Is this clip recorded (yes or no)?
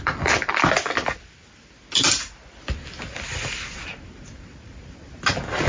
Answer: yes